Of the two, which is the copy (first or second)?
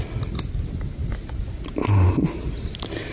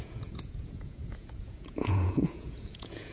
second